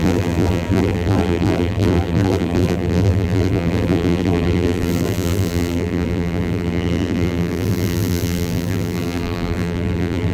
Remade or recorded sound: remade